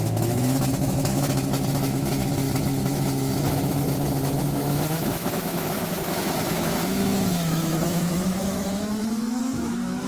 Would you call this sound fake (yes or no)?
yes